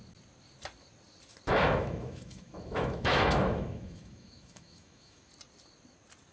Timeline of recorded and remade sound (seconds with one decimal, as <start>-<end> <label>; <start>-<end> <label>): 0.0-1.5 recorded; 1.5-5.3 remade; 5.3-6.3 recorded